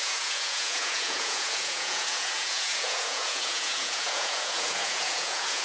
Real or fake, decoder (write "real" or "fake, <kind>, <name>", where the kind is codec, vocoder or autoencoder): fake, vocoder, Vocos